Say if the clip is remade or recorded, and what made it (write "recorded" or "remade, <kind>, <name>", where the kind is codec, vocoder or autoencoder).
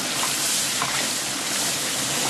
recorded